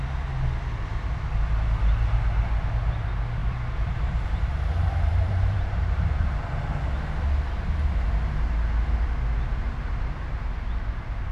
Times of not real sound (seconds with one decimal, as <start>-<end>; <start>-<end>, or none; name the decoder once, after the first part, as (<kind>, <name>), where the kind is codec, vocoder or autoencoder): 3.4-6.5 (vocoder, BigVGAN v2)

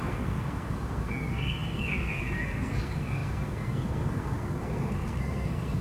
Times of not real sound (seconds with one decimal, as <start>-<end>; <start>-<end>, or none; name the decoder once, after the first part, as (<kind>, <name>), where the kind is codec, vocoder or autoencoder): 0.0-5.8 (codec, SNAC)

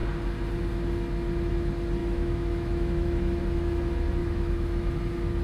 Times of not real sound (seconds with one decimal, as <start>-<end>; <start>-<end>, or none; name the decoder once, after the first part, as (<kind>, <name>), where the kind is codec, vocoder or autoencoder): 2.0-3.4 (autoencoder, DAC-VAE); 4.2-4.9

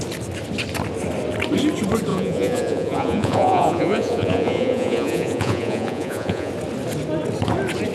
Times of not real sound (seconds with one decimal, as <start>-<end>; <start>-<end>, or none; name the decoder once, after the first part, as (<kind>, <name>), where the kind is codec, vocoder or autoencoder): 2.1-6.5 (vocoder, Vocos)

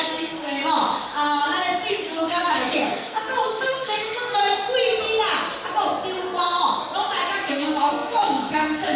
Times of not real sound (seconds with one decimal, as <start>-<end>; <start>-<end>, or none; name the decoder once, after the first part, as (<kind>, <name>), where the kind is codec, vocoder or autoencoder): 0.0-0.6 (codec, SNAC); 1.9-4.4; 7.5-9.0

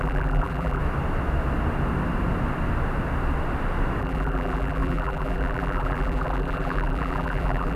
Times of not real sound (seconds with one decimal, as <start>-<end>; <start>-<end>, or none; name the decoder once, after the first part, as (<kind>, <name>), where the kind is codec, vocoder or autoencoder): 0.0-0.8 (vocoder, BigVGAN v2); 4.0-7.8

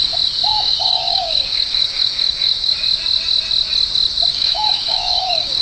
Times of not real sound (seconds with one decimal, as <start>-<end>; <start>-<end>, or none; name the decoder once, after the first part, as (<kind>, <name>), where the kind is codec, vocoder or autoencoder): 0.5-2.7 (codec, DAC); 4.3-5.6